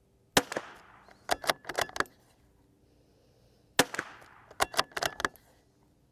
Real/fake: real